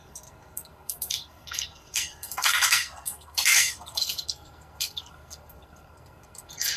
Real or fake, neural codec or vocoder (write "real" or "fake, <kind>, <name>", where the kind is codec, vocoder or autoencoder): fake, codec, SNAC